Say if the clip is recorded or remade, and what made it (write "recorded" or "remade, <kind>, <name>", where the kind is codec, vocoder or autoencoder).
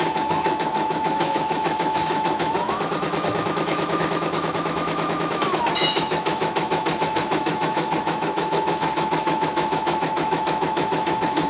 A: remade, autoencoder, DAC-VAE